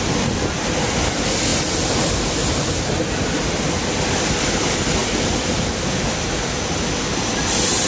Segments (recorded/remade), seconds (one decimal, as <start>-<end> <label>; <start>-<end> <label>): 0.0-7.9 recorded